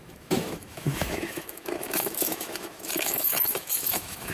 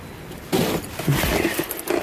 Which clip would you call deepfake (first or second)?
first